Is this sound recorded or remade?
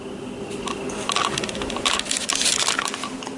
recorded